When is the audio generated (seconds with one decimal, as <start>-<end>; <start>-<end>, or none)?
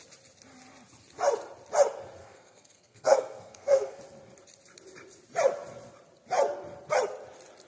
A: 2.2-4.0